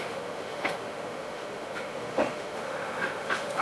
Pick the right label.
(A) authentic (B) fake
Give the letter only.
B